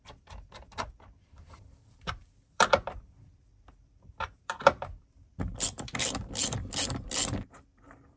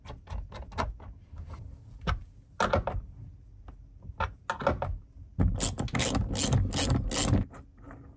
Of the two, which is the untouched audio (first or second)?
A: second